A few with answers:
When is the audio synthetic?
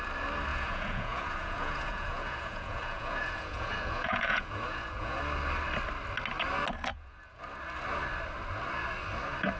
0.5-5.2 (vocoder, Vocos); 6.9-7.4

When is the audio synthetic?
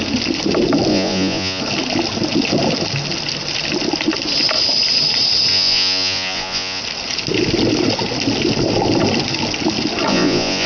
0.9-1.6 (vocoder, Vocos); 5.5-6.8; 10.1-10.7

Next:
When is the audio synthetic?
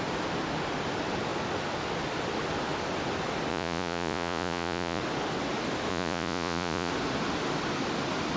3.5-5.0 (vocoder, Vocos); 5.9-6.9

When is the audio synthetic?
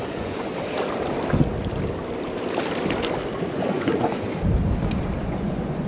0.0-0.5 (vocoder, Vocos); 3.5-4.1; 5.2-5.9